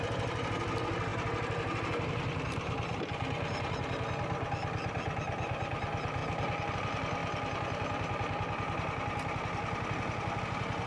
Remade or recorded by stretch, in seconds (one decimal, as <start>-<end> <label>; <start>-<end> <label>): 0.0-10.9 recorded